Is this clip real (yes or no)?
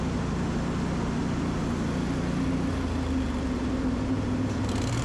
yes